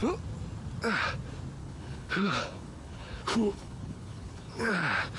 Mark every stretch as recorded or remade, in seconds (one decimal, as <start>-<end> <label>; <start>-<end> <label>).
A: 0.0-1.6 recorded; 1.6-4.7 remade; 4.7-5.2 recorded